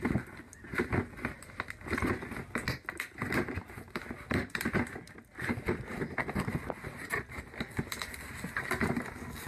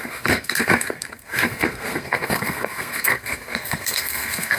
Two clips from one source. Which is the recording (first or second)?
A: first